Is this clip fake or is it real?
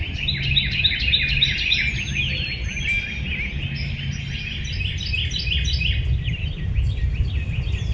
real